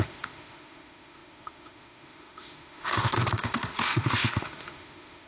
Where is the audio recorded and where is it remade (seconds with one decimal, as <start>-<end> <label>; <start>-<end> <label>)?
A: 0.0-5.3 remade